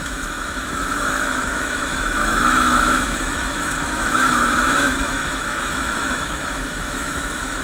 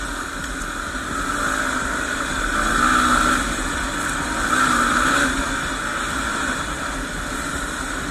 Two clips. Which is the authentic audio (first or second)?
second